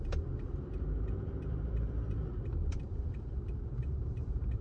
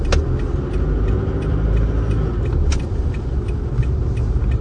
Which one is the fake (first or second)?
first